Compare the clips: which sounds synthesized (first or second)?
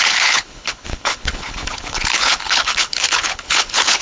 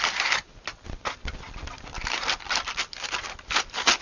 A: first